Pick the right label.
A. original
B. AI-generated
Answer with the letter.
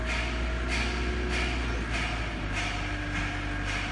A